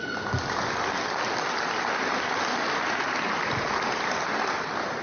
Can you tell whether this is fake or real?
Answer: real